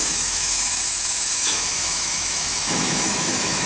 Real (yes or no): no